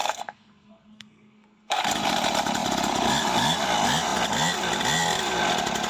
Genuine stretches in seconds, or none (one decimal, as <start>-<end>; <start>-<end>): 1.8-5.9